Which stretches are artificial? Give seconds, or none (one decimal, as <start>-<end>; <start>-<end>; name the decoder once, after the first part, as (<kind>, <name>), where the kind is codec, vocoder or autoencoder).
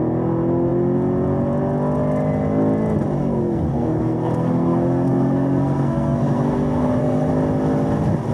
3.2-7.3 (codec, SNAC)